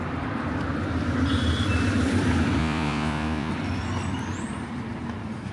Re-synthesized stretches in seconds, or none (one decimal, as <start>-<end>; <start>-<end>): 2.6-3.5